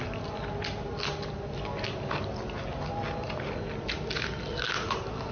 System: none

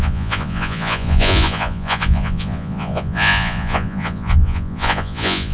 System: vocoder, Vocos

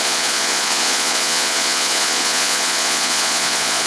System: vocoder, Vocos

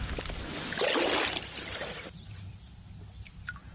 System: none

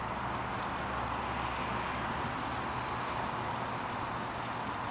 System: none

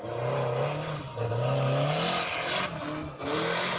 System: none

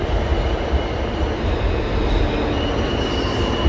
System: none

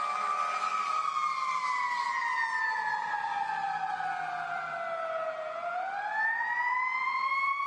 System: none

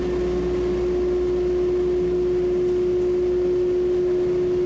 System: none